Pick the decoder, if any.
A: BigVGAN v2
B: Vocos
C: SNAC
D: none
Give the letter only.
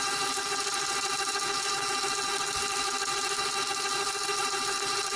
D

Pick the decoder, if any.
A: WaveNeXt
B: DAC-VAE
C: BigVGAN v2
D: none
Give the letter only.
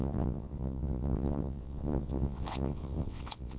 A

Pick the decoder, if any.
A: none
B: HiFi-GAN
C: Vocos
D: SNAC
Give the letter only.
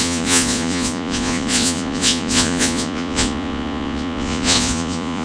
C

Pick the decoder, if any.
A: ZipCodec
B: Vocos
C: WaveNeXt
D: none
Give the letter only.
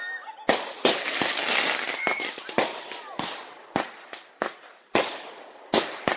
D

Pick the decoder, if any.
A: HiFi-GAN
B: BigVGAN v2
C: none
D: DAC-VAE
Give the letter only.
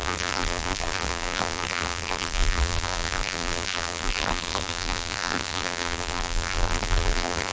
B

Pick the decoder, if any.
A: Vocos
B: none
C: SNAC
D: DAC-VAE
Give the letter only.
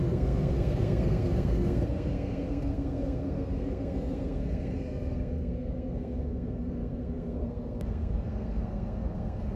C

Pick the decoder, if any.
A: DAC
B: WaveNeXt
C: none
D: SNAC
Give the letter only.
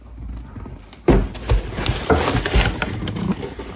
C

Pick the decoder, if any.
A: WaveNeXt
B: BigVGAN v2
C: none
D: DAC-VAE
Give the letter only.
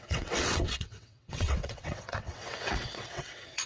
A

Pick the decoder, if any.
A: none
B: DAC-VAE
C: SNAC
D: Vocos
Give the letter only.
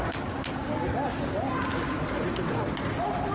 A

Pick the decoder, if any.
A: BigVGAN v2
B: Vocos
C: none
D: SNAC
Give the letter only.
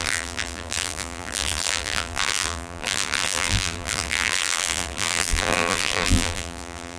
A